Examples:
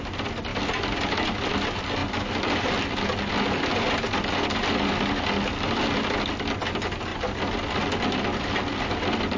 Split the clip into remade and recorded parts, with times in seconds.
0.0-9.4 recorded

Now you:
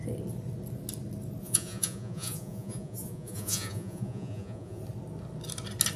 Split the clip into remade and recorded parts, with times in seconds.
0.0-1.4 recorded; 1.4-4.8 remade; 4.8-6.0 recorded

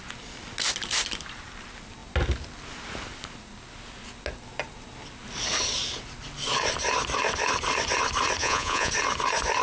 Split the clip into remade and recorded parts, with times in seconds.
0.0-8.4 recorded; 8.4-8.9 remade; 8.9-9.6 recorded